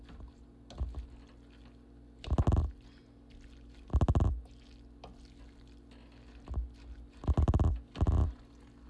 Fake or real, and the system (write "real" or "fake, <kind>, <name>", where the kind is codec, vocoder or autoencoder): real